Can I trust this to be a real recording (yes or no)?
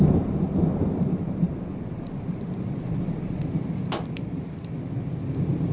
yes